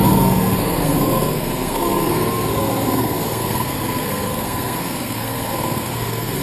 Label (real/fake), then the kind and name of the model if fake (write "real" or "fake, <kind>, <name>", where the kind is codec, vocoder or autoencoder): fake, codec, SNAC